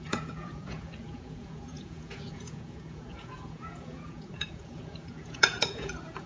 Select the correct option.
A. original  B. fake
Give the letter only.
B